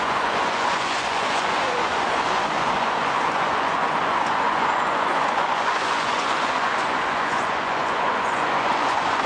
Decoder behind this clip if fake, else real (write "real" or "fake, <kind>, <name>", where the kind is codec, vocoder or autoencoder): fake, vocoder, Vocos